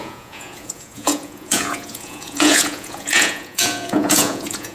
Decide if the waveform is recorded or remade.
remade